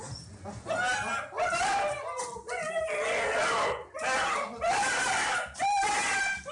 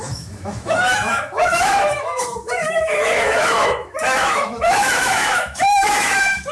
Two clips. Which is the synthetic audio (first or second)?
second